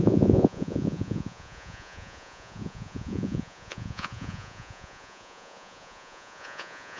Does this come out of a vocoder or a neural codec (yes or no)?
yes